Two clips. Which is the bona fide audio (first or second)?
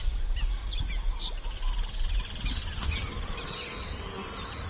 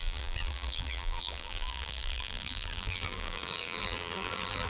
first